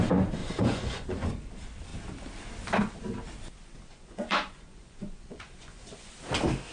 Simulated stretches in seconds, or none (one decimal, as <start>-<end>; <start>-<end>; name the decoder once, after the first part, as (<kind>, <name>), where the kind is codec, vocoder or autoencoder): 0.4-1.5 (vocoder, Vocos); 3.9-6.1